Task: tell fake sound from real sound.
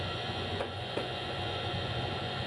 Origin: fake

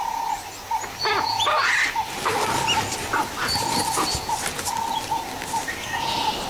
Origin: real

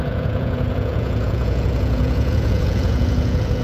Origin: fake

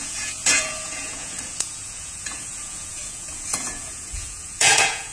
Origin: fake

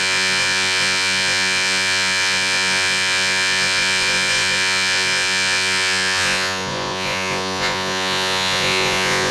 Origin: fake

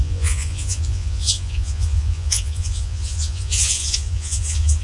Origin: fake